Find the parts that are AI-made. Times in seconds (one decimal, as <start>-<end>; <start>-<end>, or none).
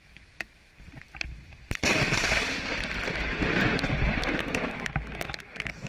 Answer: 0.0-0.7; 4.2-5.9